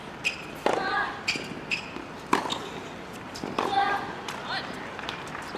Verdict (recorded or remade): recorded